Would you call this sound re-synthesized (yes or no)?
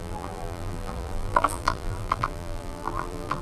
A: yes